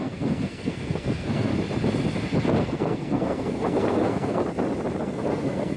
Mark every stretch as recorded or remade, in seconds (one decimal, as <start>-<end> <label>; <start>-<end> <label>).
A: 0.0-1.5 remade; 1.5-2.6 recorded; 2.6-4.4 remade; 4.4-5.0 recorded; 5.0-5.8 remade